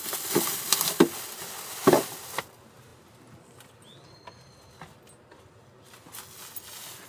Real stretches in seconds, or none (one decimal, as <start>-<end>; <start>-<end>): 0.0-7.1